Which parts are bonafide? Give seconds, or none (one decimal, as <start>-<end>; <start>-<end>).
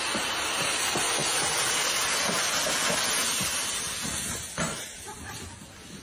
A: 0.0-6.0